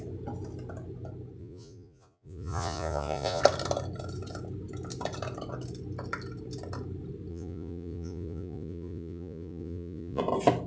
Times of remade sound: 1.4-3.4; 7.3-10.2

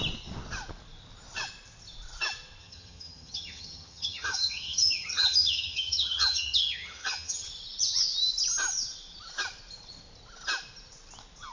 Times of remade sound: 2.6-7.5

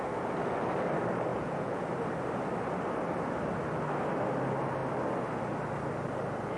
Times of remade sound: 1.3-1.8

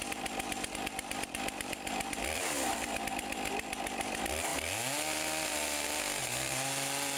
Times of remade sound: 0.0-4.5; 6.2-7.2

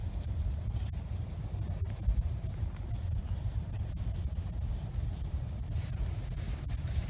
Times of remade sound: 4.7-7.1

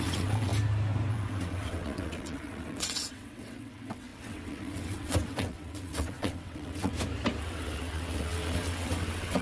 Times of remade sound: 0.0-0.5; 1.1-6.9; 7.4-9.4

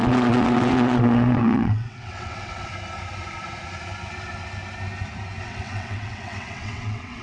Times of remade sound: 0.0-2.7; 5.4-7.2